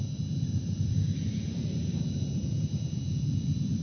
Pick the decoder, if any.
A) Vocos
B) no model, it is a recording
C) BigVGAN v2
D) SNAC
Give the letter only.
C